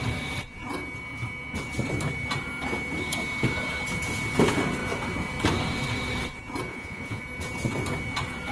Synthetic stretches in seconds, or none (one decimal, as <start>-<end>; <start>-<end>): 6.7-7.2